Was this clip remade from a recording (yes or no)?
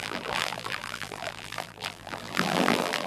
yes